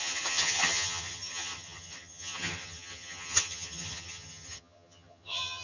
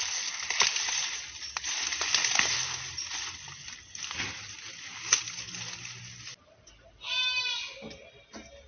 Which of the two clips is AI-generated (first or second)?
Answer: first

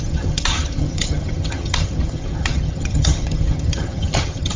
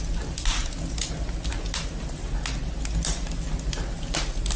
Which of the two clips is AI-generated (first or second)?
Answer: first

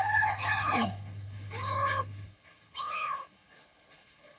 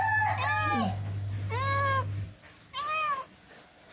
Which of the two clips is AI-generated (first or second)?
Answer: first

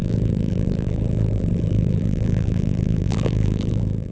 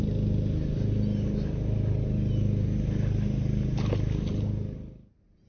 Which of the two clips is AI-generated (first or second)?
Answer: first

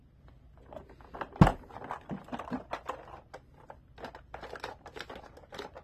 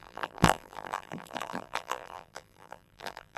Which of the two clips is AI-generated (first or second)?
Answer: second